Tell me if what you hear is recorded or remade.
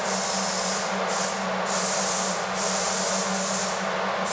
recorded